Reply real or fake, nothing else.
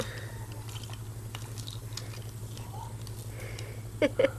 fake